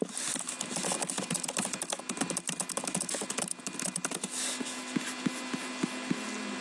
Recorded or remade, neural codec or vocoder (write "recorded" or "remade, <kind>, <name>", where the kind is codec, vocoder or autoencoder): recorded